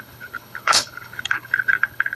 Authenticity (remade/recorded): remade